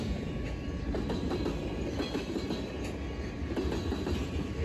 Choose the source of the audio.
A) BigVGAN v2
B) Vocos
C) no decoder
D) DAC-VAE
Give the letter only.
C